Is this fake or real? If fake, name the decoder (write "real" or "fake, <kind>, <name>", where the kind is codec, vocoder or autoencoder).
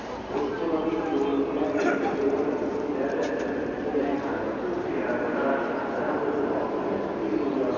real